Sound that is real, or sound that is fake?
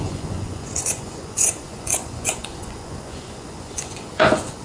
fake